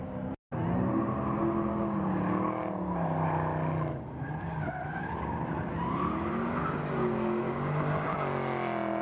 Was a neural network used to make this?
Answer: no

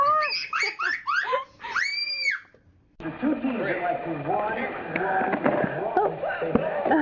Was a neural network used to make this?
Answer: no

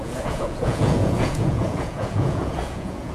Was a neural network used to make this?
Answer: yes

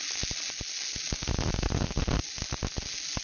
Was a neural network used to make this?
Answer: no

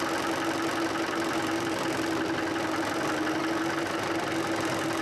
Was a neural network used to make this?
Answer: no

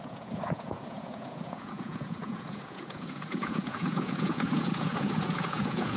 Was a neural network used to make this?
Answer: yes